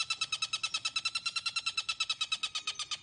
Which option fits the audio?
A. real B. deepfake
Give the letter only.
A